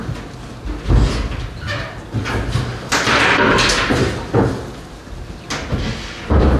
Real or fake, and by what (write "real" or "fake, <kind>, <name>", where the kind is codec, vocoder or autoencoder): real